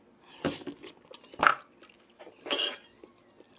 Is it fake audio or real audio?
real